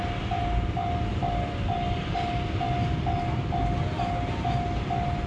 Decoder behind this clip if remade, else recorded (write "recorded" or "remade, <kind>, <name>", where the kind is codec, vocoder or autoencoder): recorded